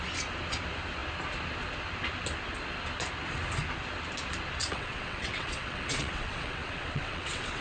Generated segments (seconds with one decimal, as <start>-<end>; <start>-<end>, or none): 4.6-7.6